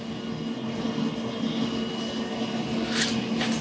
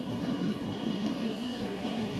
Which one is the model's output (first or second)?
second